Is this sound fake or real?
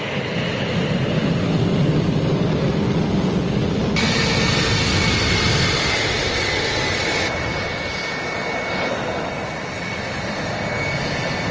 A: real